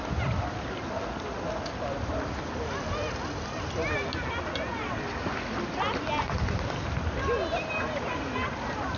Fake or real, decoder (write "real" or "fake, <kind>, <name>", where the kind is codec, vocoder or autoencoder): real